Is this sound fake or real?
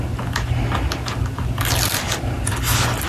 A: real